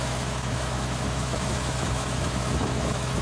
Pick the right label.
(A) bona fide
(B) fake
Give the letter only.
B